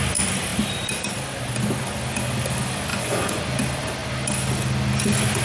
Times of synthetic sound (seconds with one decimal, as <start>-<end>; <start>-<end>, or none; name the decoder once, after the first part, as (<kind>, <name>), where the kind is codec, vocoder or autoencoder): 2.9-3.4 (vocoder, Vocos)